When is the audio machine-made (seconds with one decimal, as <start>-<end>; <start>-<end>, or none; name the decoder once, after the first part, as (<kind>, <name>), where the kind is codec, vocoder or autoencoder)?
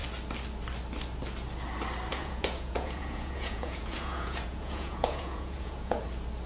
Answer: 2.1-6.0 (vocoder, Vocos)